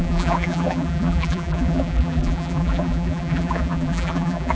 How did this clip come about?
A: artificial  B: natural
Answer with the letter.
A